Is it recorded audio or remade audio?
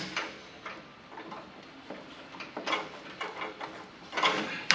recorded